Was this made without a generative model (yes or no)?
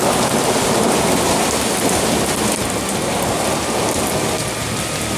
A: yes